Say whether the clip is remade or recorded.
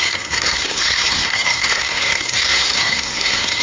remade